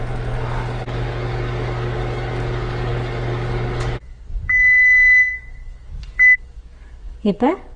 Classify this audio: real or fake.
fake